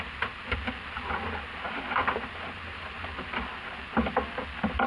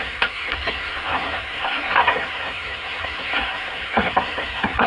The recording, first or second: first